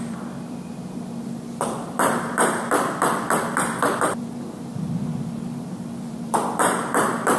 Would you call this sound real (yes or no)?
no